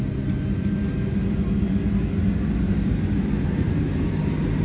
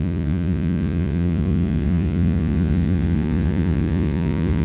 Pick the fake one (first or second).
second